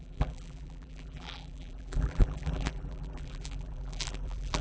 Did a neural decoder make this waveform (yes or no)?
yes